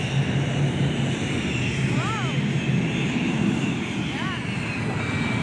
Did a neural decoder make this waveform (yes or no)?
no